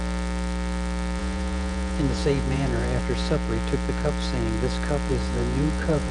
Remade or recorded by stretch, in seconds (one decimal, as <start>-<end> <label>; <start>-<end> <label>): 0.0-1.2 recorded; 1.2-3.0 remade; 3.0-5.1 recorded; 5.1-6.1 remade